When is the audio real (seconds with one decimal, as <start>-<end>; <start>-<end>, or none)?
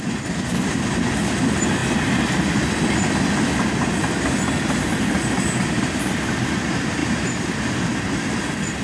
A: 0.0-8.8